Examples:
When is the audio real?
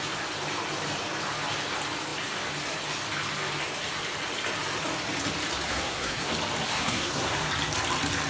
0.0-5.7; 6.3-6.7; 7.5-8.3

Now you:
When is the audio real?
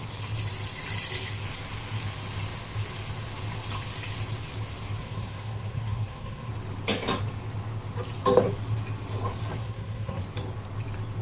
0.0-5.0; 6.5-9.6; 10.2-11.2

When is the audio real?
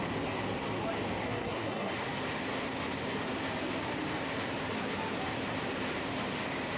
0.0-1.2; 1.9-6.8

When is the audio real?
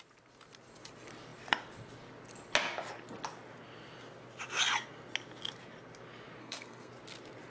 0.0-6.4; 6.9-7.5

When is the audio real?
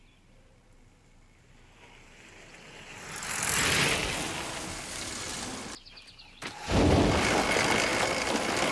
0.0-8.7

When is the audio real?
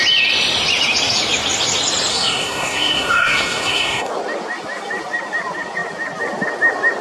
0.0-2.1; 4.1-7.0